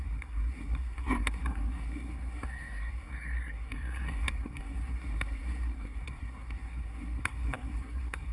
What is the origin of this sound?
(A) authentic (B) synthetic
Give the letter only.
B